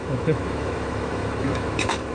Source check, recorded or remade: remade